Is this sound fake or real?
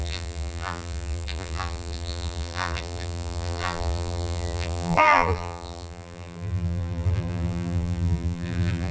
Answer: fake